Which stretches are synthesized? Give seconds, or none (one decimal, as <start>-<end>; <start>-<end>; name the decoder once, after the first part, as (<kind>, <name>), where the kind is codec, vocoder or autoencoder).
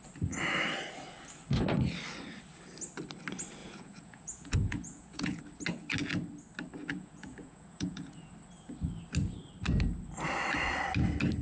3.6-5.4 (vocoder, Vocos); 6.8-8.3